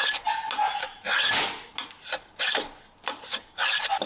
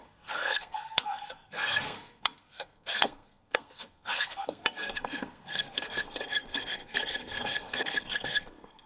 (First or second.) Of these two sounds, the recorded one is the first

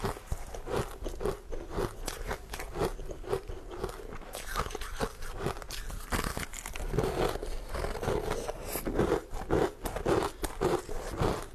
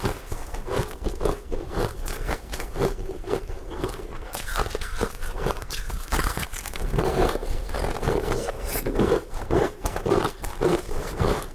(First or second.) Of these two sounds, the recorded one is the first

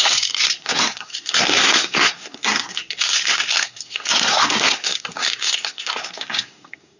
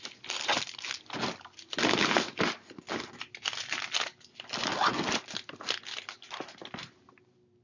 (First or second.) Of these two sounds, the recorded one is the second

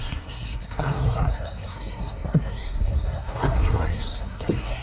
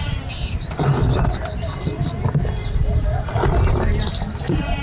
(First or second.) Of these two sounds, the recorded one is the second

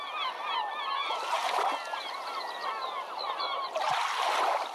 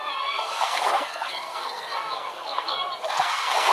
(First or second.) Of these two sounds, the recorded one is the first